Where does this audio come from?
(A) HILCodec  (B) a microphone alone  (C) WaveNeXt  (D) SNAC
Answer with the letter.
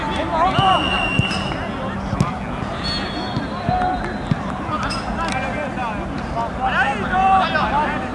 B